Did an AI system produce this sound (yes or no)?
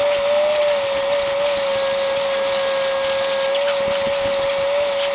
no